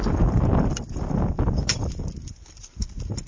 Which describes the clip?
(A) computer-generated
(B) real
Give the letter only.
B